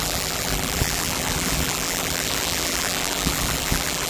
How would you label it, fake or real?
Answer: fake